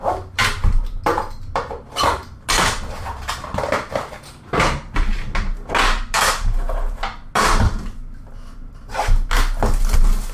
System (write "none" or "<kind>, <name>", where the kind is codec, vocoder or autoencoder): none